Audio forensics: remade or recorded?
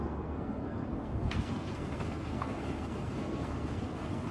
remade